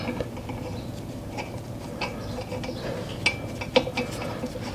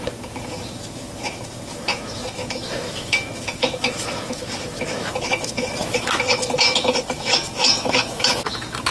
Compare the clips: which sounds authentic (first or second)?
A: first